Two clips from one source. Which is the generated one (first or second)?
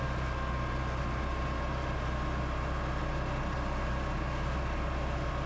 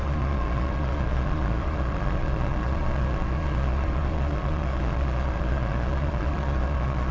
second